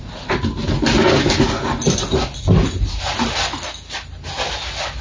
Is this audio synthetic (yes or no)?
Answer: no